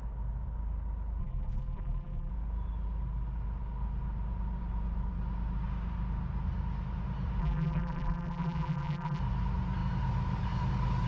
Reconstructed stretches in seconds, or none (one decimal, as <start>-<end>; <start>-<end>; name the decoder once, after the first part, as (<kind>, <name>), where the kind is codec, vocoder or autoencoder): 1.2-2.3 (vocoder, BigVGAN v2); 7.4-9.2